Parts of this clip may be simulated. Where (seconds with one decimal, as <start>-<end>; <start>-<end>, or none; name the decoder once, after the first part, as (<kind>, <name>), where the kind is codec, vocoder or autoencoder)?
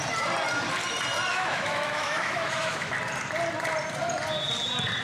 1.3-2.9 (autoencoder, DAC-VAE)